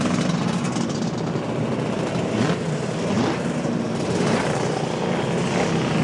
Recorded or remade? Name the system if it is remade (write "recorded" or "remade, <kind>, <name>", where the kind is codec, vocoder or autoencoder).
recorded